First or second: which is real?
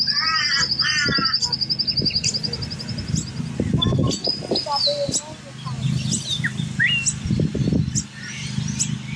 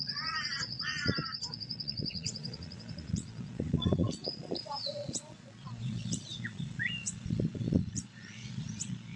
first